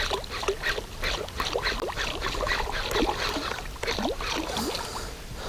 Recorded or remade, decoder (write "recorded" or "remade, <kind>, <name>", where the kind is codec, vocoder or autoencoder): recorded